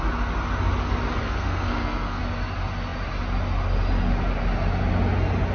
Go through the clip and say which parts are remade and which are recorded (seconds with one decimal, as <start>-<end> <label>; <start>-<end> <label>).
0.0-1.2 recorded; 1.2-2.2 remade; 2.2-5.5 recorded